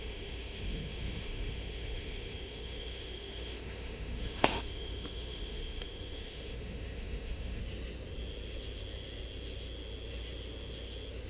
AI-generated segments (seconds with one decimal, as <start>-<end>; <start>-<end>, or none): 0.0-7.6